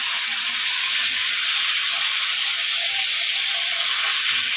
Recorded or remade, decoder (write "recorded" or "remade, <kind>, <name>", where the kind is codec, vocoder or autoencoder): recorded